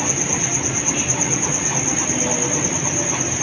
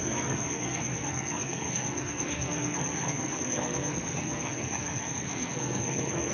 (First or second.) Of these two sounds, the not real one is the second